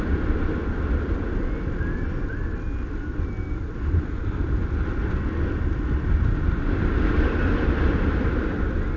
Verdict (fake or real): real